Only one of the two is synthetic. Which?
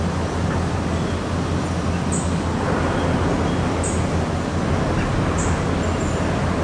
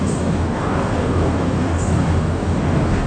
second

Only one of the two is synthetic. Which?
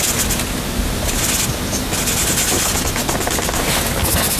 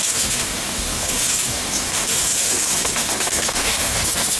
second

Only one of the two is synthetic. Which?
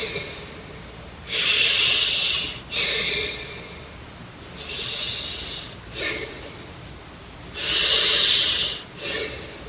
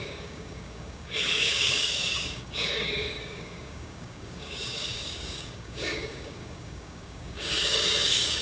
second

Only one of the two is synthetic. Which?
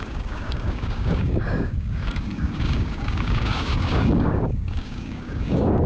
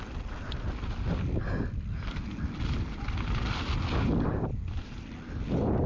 first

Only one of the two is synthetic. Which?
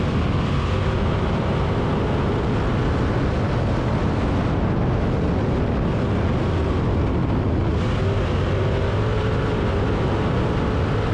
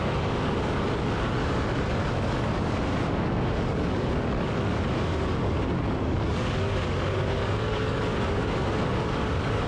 second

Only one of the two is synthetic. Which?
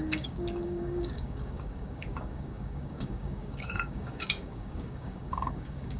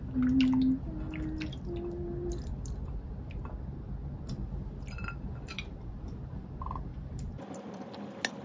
first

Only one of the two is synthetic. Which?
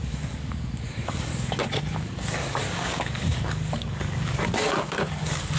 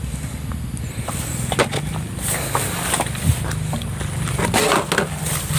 first